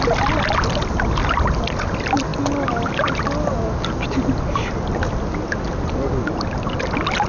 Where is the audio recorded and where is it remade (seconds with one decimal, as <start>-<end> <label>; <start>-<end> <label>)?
0.0-7.3 recorded